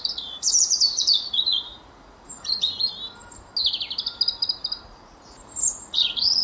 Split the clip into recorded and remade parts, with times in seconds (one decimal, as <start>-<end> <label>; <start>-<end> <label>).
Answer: 0.0-2.9 remade; 2.9-4.9 recorded; 4.9-6.4 remade